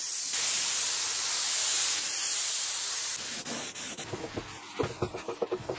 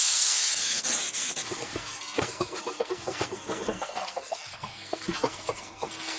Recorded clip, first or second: first